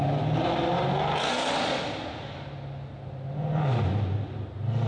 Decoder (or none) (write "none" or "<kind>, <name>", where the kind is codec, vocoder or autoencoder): none